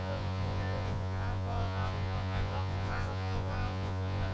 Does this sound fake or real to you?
fake